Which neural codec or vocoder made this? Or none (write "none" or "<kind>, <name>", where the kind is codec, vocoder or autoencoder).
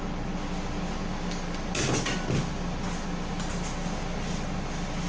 none